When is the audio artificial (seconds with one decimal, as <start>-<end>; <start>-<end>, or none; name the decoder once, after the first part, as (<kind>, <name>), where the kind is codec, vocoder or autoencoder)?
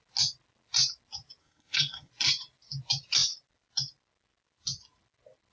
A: 1.4-2.1 (codec, SNAC)